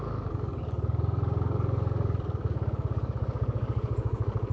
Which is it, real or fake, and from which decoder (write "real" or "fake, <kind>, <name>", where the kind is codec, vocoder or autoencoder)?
fake, codec, DAC